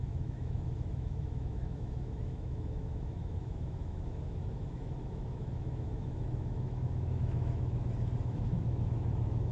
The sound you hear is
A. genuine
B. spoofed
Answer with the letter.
B